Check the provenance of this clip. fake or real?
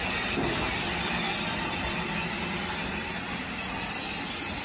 real